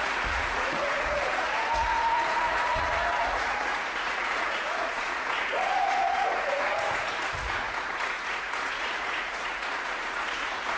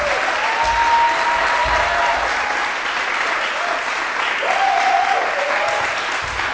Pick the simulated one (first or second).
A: first